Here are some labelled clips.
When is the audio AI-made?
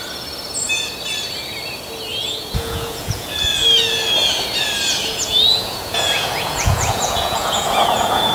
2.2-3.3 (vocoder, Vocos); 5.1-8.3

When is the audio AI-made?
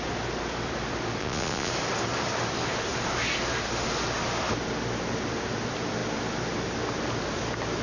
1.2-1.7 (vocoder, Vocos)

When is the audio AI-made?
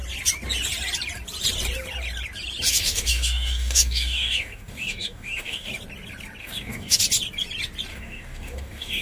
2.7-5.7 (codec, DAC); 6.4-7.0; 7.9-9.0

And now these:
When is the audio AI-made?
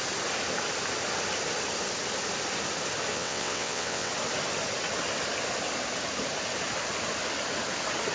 3.1-4.1 (vocoder, WaveNeXt)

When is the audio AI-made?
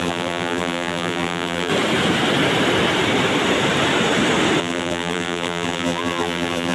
0.0-1.7 (vocoder, BigVGAN v2); 4.6-6.7